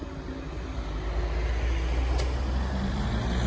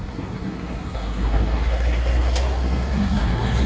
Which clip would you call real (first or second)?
first